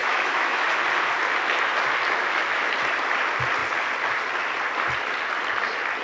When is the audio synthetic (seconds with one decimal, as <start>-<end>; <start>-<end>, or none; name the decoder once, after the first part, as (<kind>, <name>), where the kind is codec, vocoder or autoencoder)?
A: 0.0-0.7 (autoencoder, DAC-VAE); 2.2-2.7